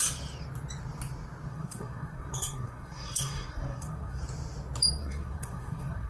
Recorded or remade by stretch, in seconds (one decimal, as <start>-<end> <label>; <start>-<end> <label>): 0.0-1.5 recorded; 1.5-4.2 remade; 4.2-5.0 recorded; 5.0-6.1 remade